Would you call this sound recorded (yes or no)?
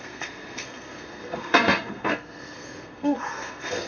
no